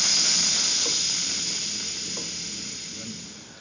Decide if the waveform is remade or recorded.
recorded